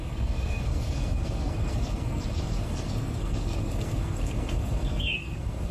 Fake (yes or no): yes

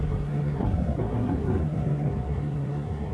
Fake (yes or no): yes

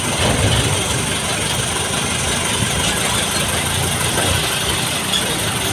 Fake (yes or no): no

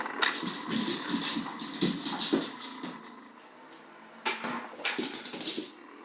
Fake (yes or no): no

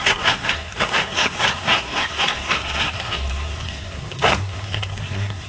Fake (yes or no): yes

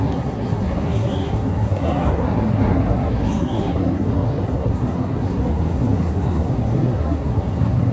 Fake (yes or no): yes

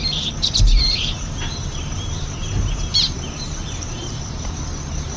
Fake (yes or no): yes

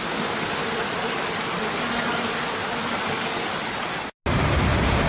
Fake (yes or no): no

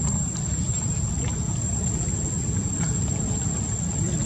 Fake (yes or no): no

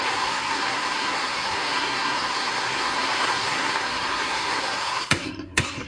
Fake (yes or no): yes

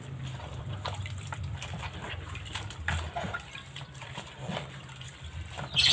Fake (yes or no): yes